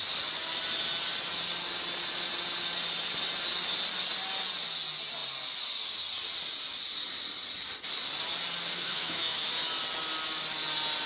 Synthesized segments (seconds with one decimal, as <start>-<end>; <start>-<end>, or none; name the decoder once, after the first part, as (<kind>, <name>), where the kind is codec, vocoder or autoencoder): 8.7-9.5 (autoencoder, DAC-VAE)